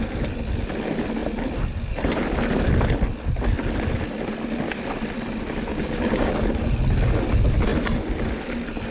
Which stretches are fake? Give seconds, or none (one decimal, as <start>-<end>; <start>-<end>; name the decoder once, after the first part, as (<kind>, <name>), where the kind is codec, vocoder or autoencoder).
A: 5.7-6.3 (codec, DAC)